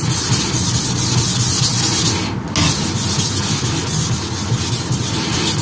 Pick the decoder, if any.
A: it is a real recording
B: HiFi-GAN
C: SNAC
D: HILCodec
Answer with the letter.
A